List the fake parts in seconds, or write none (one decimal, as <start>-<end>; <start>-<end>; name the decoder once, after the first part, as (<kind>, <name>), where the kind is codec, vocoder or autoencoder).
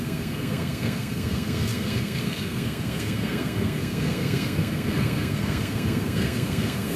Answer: 0.0-7.0 (codec, SNAC)